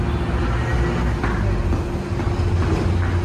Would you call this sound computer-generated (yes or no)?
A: no